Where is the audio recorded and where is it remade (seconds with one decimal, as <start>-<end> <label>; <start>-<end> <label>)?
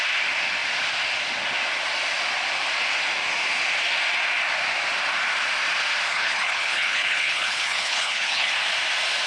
0.0-6.1 recorded; 6.1-8.5 remade; 8.5-9.3 recorded